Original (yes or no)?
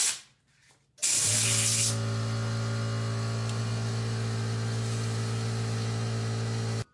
yes